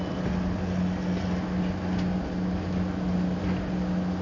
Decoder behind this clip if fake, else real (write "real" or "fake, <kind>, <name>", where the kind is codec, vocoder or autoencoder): real